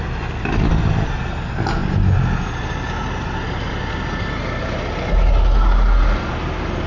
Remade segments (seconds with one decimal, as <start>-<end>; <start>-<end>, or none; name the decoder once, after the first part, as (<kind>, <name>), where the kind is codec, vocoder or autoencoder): none